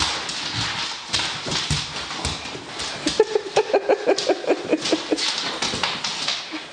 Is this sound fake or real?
real